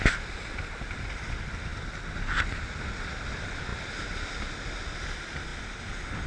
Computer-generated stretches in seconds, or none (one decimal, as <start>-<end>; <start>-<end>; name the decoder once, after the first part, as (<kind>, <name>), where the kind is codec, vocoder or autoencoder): none